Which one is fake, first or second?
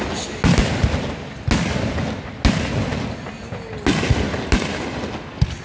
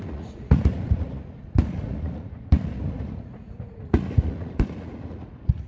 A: second